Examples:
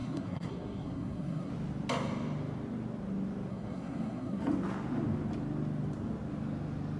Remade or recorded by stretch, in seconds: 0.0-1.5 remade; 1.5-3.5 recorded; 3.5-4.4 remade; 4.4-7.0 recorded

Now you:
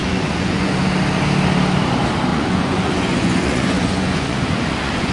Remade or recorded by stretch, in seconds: 0.0-0.7 remade; 0.7-2.3 recorded; 2.3-5.1 remade

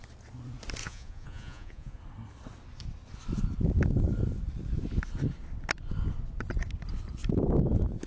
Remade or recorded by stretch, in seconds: 0.0-0.8 recorded; 0.8-2.0 remade; 2.0-8.1 recorded

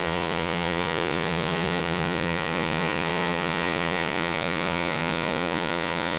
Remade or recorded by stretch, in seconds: 0.0-6.2 remade

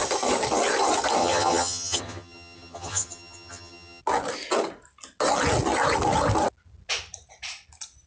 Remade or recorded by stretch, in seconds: 0.0-1.2 recorded; 1.2-4.0 remade; 4.0-8.1 recorded

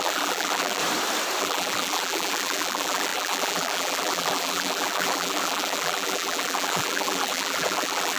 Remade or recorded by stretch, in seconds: 0.0-0.8 remade; 0.8-1.4 recorded; 1.4-8.2 remade